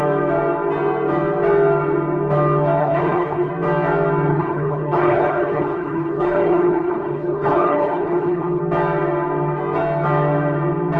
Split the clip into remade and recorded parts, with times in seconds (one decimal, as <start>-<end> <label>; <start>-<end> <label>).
0.0-2.8 recorded; 2.8-3.5 remade; 3.5-4.3 recorded; 4.3-8.6 remade; 8.6-11.0 recorded